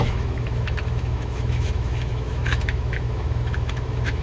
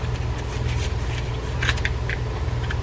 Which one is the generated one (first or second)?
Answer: first